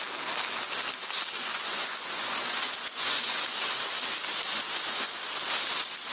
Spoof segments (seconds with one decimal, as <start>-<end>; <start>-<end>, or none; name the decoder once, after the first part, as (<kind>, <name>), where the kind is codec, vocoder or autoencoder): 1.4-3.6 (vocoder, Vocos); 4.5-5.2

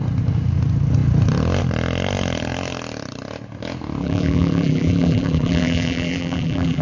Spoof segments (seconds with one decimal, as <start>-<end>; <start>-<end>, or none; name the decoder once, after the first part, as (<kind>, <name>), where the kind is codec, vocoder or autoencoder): 4.0-6.8 (vocoder, BigVGAN v2)

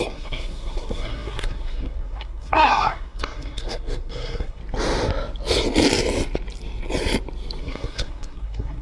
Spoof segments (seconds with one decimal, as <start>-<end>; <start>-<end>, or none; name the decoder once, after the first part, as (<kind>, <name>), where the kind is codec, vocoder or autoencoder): 0.0-4.6 (codec, SNAC); 7.6-8.8